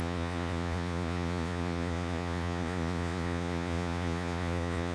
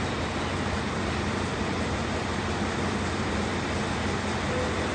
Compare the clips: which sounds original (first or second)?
second